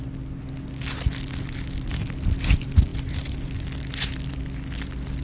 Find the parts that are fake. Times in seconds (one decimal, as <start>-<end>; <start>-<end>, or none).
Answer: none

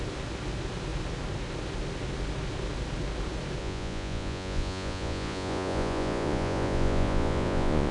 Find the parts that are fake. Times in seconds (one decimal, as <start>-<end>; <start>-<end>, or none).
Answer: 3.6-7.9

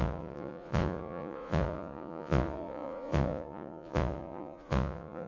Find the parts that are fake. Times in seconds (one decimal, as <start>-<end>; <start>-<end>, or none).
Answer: 0.0-5.3